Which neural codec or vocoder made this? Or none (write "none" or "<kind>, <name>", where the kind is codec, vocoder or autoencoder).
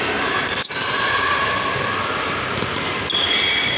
none